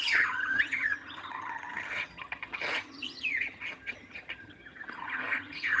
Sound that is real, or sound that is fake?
fake